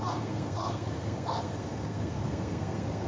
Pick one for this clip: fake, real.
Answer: fake